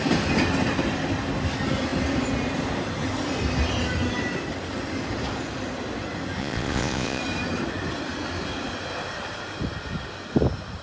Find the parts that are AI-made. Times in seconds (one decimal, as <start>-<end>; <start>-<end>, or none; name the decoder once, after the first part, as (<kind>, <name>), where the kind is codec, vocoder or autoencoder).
6.4-7.2 (vocoder, Vocos)